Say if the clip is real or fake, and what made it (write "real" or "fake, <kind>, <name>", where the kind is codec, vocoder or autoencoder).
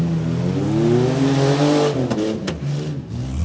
real